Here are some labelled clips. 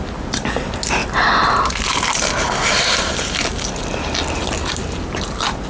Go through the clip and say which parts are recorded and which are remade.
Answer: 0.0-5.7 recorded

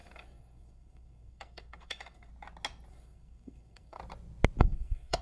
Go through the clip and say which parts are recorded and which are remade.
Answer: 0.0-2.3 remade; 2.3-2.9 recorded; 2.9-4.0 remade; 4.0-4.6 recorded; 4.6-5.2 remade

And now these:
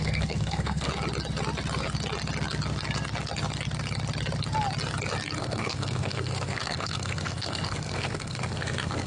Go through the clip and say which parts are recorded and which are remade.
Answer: 0.0-0.9 remade; 0.9-5.4 recorded; 5.4-9.1 remade

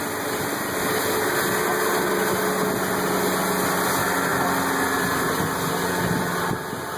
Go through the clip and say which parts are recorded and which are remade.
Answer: 0.0-7.0 recorded

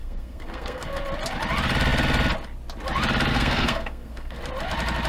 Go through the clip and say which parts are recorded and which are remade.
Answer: 0.0-1.0 remade; 1.0-3.3 recorded; 3.3-4.4 remade; 4.4-5.1 recorded